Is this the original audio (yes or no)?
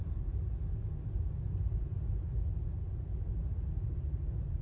no